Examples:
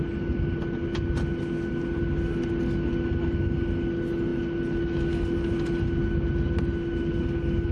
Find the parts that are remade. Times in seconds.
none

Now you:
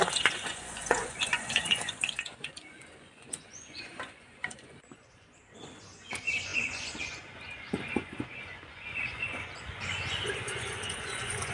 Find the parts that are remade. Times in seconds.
0.0-11.5 (vocoder, Vocos)

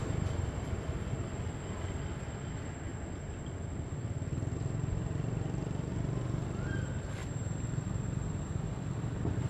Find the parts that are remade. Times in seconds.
none

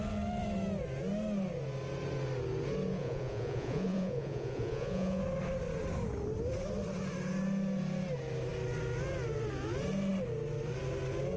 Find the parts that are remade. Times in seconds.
2.9-5.2 (vocoder, Vocos)

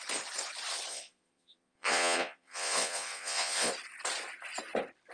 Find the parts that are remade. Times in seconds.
0.9-3.7 (vocoder, Vocos)

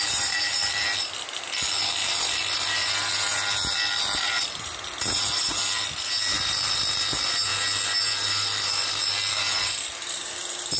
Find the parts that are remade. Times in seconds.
none